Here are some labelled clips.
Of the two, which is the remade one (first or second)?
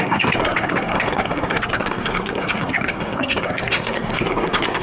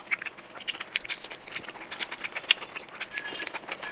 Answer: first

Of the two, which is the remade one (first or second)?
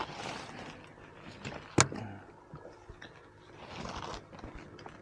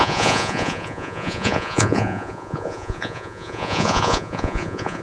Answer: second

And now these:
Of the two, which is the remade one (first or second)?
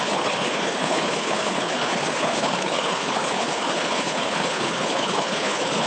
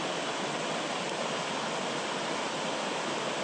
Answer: first